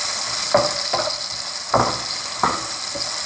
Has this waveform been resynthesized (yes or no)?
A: no